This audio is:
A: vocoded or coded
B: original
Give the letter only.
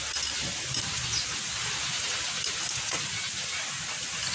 B